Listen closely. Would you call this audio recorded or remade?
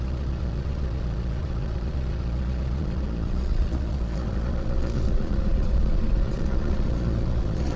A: remade